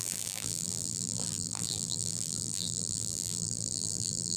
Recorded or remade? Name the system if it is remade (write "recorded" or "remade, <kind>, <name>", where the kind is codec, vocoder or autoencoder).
remade, vocoder, BigVGAN v2